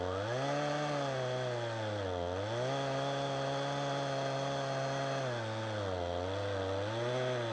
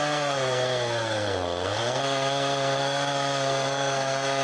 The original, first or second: first